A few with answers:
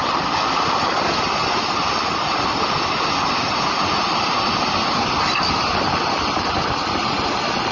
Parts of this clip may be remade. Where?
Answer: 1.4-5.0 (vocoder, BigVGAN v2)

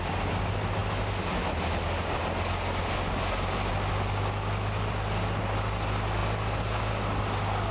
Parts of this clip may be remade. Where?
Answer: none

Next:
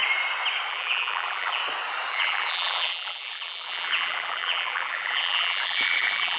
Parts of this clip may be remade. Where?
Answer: 0.7-1.6 (vocoder, BigVGAN v2); 2.1-6.4